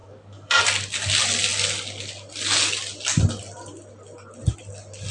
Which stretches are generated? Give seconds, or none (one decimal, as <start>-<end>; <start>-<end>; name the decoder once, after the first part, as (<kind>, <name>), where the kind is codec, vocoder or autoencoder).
0.0-0.6 (codec, DAC)